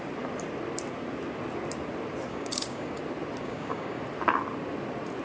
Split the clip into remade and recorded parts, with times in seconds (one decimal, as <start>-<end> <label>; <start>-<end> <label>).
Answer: 0.0-2.3 recorded; 2.3-2.9 remade; 2.9-3.4 recorded; 3.4-4.0 remade; 4.0-5.2 recorded